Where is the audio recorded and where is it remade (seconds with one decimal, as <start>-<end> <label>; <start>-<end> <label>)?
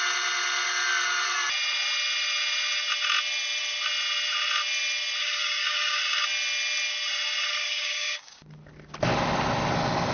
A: 0.0-5.2 recorded; 5.2-6.0 remade; 6.0-7.5 recorded; 7.5-8.4 remade; 8.4-10.1 recorded